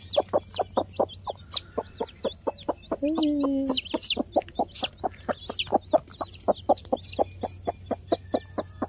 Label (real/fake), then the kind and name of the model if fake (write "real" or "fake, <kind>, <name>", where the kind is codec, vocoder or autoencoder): real